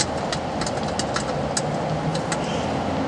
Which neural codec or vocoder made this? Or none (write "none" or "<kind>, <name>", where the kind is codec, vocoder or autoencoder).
none